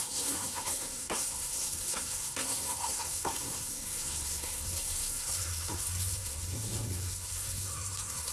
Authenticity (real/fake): fake